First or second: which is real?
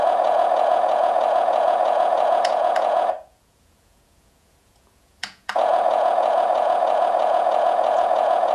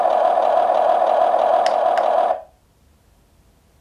second